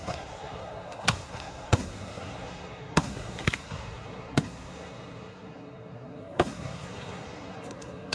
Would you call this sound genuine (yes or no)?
no